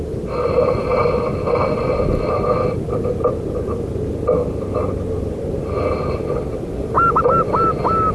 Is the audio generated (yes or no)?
no